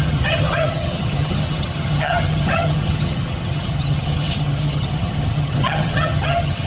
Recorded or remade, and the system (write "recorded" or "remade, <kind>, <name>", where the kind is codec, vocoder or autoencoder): remade, vocoder, HiFi-GAN